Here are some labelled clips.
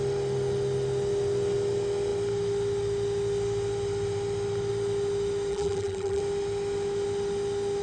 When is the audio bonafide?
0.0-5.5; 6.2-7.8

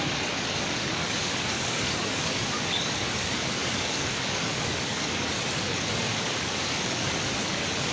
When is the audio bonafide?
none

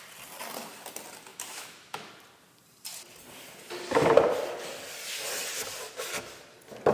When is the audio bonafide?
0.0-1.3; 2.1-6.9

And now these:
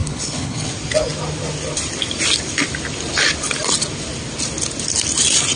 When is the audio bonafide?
0.7-5.6